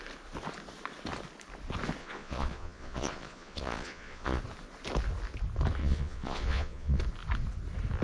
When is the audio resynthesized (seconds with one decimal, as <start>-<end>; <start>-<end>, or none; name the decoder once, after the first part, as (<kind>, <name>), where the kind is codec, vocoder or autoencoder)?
2.0-4.4 (vocoder, Vocos); 5.8-7.0